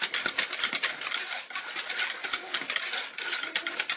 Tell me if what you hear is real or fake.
real